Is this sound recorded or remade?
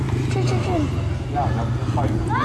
recorded